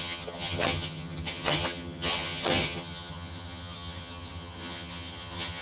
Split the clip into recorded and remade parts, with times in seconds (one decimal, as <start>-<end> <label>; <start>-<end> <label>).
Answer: 0.0-5.6 remade